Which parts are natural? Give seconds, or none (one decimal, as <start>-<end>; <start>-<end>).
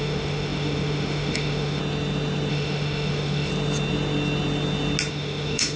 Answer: 1.8-2.5; 3.5-5.1